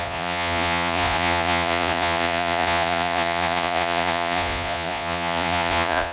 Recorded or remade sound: remade